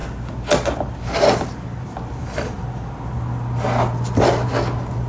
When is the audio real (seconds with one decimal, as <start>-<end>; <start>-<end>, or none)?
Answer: 0.0-5.1